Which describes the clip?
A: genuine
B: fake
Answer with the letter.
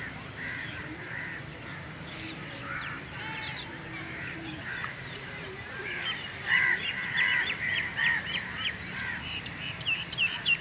B